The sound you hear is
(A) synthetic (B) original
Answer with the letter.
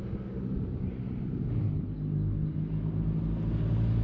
B